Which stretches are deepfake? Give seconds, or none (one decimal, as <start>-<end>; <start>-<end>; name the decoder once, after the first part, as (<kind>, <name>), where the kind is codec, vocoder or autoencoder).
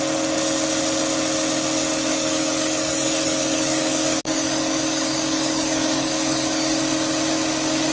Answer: 2.1-6.8 (codec, DAC)